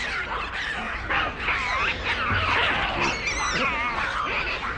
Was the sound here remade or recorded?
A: recorded